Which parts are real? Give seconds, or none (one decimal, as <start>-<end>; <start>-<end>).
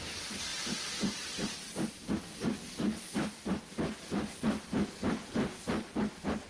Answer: 0.0-6.5